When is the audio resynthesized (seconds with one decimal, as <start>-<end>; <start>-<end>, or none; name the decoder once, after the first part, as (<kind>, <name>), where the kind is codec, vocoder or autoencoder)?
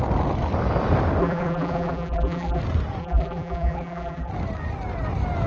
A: 1.2-2.6 (vocoder, BigVGAN v2); 3.0-4.3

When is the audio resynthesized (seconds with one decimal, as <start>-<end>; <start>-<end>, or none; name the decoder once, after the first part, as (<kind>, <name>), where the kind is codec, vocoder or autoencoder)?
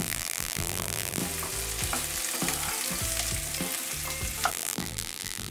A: 0.0-1.2 (vocoder, BigVGAN v2); 4.5-5.5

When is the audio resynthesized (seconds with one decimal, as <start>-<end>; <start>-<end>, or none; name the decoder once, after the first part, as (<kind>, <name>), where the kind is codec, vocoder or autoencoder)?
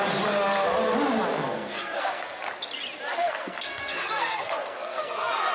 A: 1.3-2.4 (codec, SNAC); 3.1-5.5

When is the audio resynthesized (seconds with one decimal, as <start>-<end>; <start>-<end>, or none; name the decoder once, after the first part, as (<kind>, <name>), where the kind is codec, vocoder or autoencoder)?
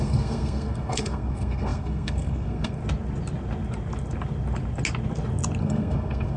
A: 0.0-2.8 (codec, SNAC); 5.6-6.4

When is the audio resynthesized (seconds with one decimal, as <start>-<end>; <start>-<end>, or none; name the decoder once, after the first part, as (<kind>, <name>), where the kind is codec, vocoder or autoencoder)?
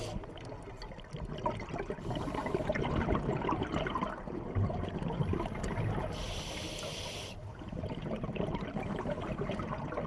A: none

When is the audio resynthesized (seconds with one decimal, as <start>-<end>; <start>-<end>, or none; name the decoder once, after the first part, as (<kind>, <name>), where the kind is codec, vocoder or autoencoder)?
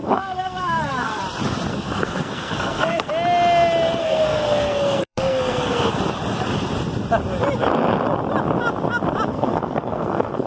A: 0.0-1.2 (codec, SNAC); 1.7-3.1; 4.0-6.0; 9.3-10.5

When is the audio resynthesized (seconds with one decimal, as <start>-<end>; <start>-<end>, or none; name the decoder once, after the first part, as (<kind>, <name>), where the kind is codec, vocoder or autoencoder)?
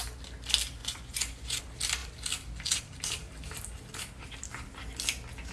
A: 0.8-1.6 (vocoder, Vocos)